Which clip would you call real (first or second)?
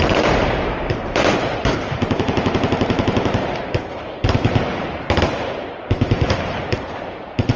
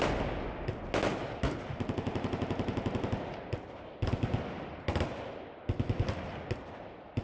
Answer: second